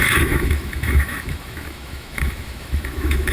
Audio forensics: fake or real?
fake